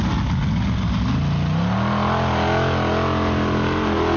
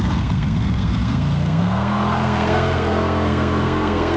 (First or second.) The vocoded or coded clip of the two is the second